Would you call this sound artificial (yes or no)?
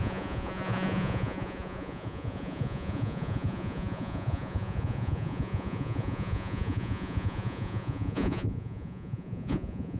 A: yes